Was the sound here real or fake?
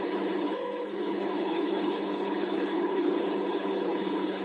fake